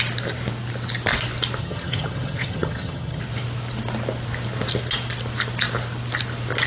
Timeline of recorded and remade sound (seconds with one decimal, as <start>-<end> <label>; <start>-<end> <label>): 0.0-1.6 recorded; 1.6-3.2 remade; 3.2-6.7 recorded